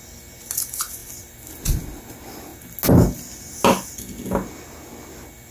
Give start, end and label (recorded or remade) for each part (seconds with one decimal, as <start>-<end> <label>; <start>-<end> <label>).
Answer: 0.0-5.5 recorded

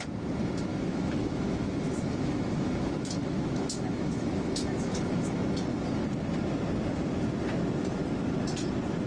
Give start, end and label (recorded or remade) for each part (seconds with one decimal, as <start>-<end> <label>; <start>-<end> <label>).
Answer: 0.0-0.7 recorded; 0.7-5.4 remade; 5.4-9.1 recorded

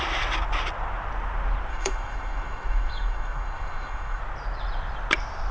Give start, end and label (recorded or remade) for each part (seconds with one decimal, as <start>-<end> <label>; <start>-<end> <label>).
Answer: 0.0-1.7 recorded; 1.7-4.2 remade; 4.2-5.5 recorded

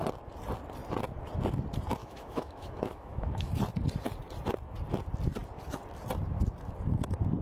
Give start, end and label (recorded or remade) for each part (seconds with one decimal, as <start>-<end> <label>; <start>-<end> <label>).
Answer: 0.0-2.0 recorded; 2.0-3.5 remade; 3.5-7.4 recorded

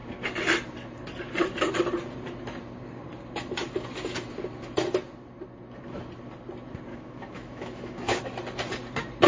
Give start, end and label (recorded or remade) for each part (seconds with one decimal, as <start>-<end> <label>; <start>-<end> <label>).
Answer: 0.0-6.9 recorded; 6.9-8.2 remade; 8.2-9.3 recorded

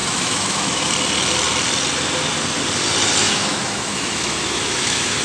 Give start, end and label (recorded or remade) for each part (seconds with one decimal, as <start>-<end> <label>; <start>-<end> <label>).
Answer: 0.0-0.9 remade; 0.9-3.2 recorded; 3.2-5.2 remade

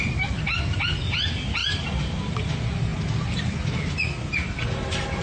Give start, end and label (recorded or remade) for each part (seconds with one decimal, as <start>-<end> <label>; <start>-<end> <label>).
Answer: 0.0-5.2 recorded